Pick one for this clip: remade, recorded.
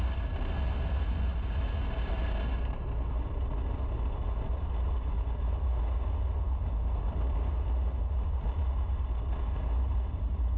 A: recorded